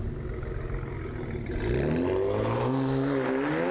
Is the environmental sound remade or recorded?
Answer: recorded